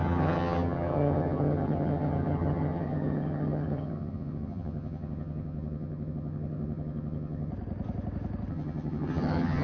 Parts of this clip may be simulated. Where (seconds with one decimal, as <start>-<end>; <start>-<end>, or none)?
0.0-7.5; 8.5-9.6